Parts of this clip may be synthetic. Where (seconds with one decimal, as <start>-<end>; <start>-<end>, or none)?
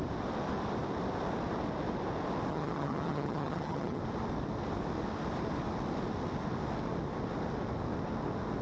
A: 2.5-4.0